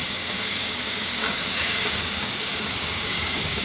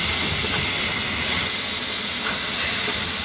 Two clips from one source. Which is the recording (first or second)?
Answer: second